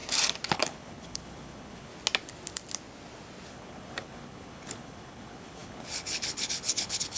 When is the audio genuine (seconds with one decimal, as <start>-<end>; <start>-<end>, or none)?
0.0-0.5; 1.9-3.5